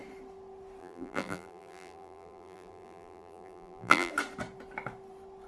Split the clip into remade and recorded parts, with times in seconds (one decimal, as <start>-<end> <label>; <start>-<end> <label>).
0.0-0.8 recorded; 0.8-4.1 remade; 4.1-5.5 recorded